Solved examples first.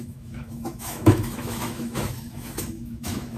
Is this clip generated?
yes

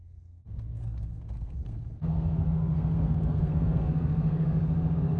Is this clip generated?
yes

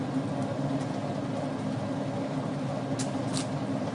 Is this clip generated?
no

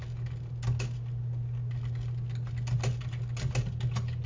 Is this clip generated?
no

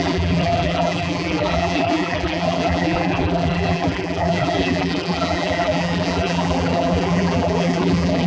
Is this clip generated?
yes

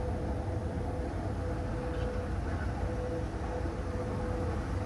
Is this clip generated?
no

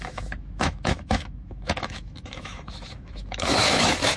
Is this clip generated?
yes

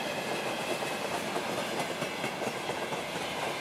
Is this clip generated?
no